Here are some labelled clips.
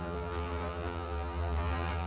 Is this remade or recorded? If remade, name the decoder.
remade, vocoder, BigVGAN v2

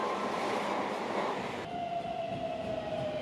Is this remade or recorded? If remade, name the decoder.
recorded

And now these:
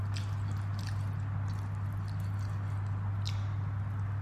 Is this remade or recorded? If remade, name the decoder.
recorded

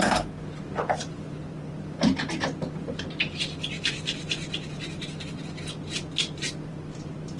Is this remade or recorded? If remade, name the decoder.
remade, vocoder, BigVGAN v2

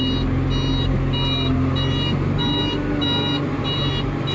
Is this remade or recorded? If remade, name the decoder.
recorded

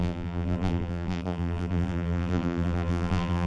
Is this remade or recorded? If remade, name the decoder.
remade, vocoder, BigVGAN v2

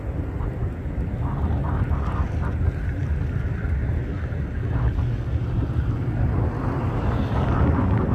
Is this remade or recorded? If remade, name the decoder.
recorded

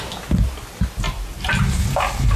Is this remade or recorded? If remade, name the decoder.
recorded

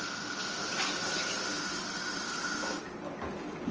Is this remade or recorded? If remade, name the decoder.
recorded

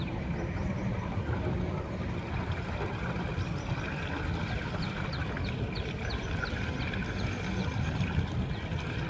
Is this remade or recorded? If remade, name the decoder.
remade, vocoder, BigVGAN v2